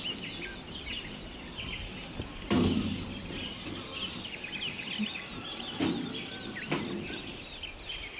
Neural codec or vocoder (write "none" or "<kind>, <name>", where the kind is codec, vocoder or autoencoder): none